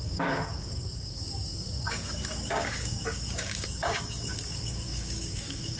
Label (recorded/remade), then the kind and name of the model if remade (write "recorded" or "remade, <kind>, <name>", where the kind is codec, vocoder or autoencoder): remade, codec, DAC